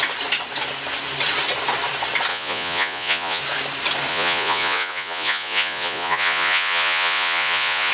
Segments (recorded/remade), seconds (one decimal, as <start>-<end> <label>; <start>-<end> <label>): 0.0-2.3 recorded; 2.3-3.4 remade; 3.4-4.1 recorded; 4.1-7.9 remade